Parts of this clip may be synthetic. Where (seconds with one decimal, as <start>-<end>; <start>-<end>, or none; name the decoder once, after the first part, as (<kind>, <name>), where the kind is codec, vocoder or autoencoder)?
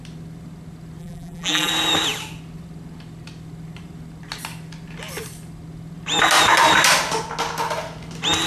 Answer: 1.0-1.7 (vocoder, BigVGAN v2)